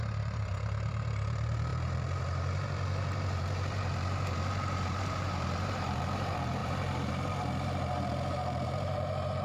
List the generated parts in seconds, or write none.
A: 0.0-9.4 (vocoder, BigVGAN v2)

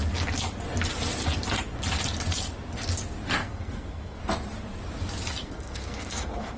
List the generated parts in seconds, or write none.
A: 3.4-4.2 (codec, SNAC); 5.4-6.6